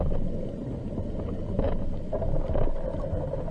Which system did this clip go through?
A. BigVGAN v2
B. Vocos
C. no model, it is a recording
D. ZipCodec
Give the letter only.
C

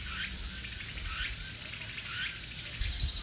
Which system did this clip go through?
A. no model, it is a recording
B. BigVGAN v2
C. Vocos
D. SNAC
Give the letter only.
A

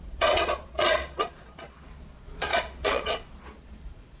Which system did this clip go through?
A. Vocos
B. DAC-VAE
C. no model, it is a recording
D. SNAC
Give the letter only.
A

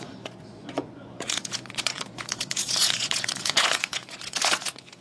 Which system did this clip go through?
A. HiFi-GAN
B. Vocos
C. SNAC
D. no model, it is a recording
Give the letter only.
B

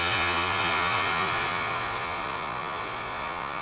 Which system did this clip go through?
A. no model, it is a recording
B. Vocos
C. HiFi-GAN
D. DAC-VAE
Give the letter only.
B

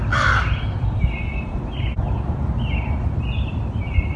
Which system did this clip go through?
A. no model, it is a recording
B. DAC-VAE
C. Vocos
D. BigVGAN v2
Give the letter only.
A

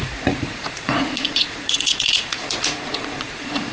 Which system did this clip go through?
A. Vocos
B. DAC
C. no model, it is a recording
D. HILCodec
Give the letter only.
A